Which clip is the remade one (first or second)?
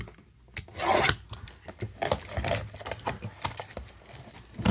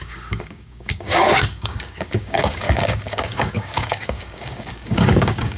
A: second